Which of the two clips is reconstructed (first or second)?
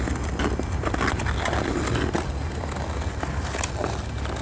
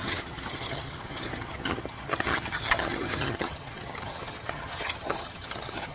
second